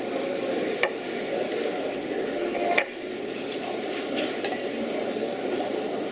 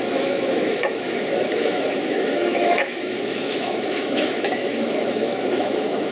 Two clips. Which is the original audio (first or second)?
first